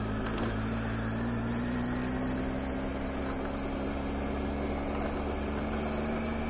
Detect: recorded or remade recorded